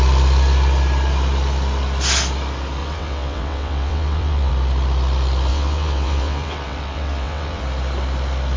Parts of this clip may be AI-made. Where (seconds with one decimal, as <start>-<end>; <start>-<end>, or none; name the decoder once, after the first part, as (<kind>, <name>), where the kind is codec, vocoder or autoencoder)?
2.8-4.5 (vocoder, WaveNeXt); 5.5-7.6